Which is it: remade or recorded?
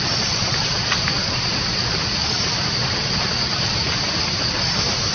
remade